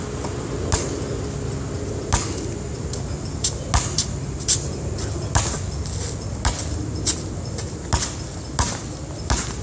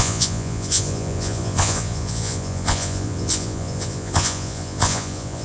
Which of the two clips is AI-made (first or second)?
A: second